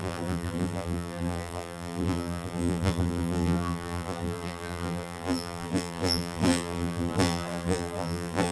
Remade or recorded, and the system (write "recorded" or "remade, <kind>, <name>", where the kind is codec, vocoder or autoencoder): remade, vocoder, BigVGAN v2